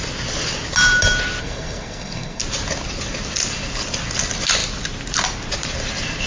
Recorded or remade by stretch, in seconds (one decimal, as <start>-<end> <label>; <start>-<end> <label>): 0.0-1.4 recorded; 1.4-2.4 remade; 2.4-6.3 recorded